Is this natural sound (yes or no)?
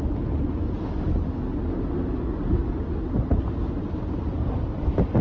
yes